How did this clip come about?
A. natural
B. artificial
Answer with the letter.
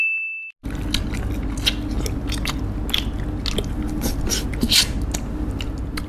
A